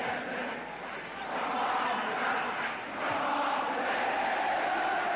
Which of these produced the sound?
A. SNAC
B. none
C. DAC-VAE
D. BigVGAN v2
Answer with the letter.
B